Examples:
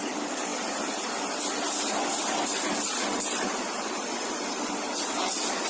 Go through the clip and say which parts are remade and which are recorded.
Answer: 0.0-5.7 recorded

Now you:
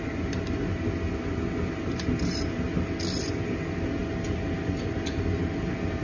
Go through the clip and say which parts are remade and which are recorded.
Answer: 0.0-6.0 recorded

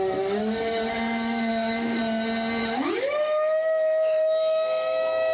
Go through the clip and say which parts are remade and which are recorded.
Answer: 0.0-2.0 remade; 2.0-2.6 recorded; 2.6-5.3 remade

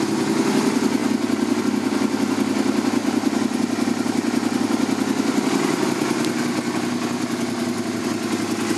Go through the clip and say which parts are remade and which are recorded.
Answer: 0.0-8.8 recorded

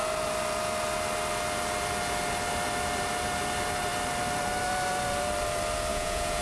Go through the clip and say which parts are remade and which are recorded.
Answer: 0.0-5.9 recorded; 5.9-6.4 remade

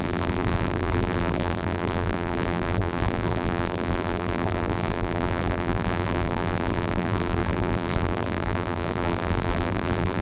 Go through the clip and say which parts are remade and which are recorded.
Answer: 0.0-10.2 remade